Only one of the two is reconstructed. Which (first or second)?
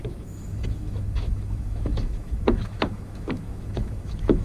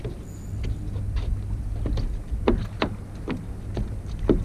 first